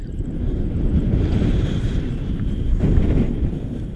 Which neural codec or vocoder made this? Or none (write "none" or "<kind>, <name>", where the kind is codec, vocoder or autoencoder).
vocoder, BigVGAN v2